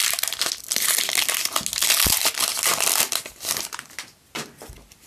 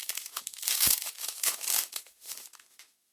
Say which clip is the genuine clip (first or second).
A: first